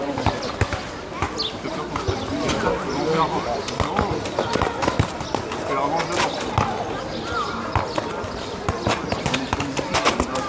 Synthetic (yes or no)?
no